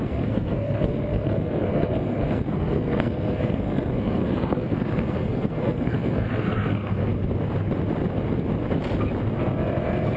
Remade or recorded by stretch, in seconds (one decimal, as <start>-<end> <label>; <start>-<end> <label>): 0.0-7.1 remade; 7.1-10.2 recorded